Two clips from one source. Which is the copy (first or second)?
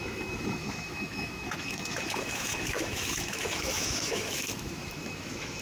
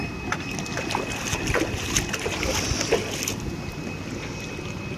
first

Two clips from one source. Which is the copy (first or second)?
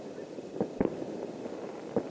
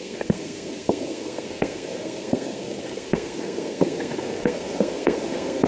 second